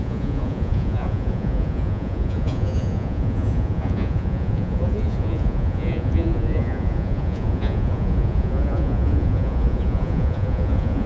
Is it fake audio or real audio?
fake